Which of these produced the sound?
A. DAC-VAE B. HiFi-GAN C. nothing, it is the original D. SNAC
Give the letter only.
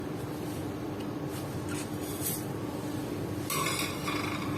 C